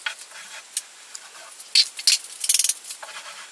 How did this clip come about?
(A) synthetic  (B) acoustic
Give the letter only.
B